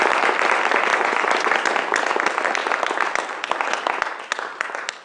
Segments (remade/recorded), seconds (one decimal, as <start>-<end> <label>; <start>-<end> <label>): 0.0-0.9 recorded; 0.9-1.5 remade; 1.5-5.0 recorded

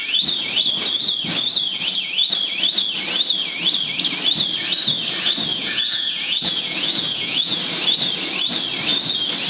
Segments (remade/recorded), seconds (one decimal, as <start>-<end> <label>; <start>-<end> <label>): 0.0-5.5 recorded; 5.5-7.6 remade; 7.6-9.5 recorded

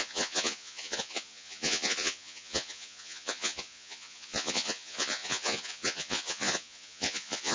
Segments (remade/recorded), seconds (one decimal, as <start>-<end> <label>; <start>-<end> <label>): 0.0-7.5 remade

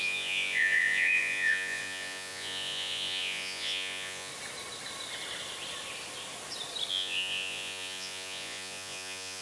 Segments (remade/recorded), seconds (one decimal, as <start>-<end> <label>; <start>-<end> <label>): 0.0-4.3 remade; 4.3-6.9 recorded; 6.9-9.4 remade

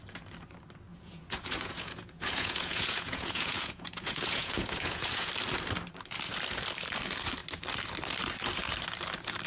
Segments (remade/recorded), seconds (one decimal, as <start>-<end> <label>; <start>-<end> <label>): 0.0-0.9 recorded; 0.9-5.3 remade; 5.3-9.5 recorded